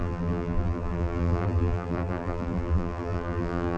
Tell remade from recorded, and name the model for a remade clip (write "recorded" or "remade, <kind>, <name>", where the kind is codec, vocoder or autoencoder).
remade, vocoder, BigVGAN v2